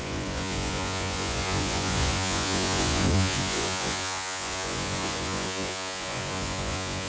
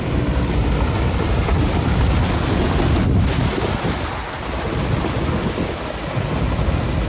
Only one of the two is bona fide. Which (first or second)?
second